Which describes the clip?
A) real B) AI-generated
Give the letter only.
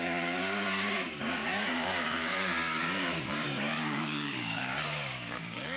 B